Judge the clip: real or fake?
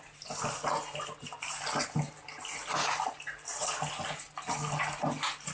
real